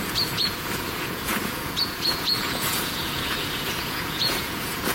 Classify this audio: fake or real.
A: fake